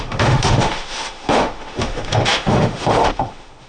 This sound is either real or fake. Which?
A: fake